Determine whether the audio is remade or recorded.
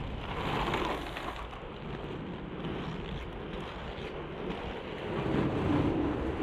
recorded